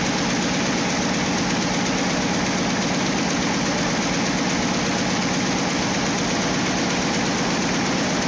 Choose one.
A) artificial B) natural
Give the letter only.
B